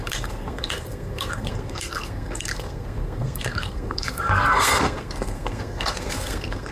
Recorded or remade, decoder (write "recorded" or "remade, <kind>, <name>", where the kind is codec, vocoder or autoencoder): remade, codec, SNAC